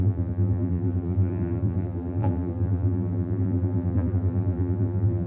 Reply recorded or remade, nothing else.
remade